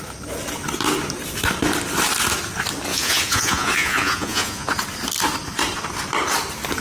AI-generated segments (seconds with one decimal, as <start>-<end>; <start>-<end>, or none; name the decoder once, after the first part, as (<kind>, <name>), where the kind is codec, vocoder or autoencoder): 2.9-4.7 (vocoder, Vocos)